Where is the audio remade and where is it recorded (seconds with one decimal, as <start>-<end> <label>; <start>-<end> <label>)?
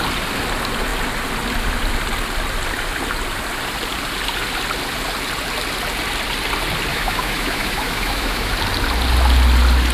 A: 0.0-6.9 recorded; 6.9-8.5 remade; 8.5-9.9 recorded